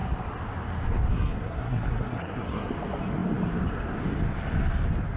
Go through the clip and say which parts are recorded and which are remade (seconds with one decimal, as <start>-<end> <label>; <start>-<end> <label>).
0.0-1.1 recorded; 1.1-2.7 remade; 2.7-5.2 recorded